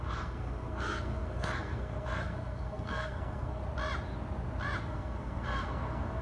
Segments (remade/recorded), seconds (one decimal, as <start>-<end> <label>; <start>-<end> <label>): 0.0-3.6 remade; 3.6-4.8 recorded; 4.8-6.2 remade